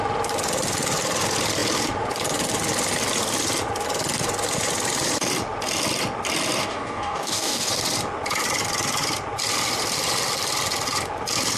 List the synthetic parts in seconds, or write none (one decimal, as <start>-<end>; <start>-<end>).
6.6-7.7